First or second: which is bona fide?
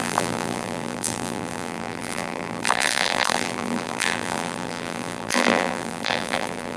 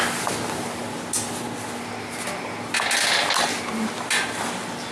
second